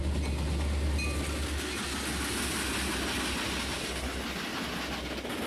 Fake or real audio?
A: real